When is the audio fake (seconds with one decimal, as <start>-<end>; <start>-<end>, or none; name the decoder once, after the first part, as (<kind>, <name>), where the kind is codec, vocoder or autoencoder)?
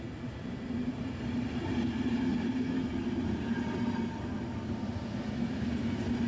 none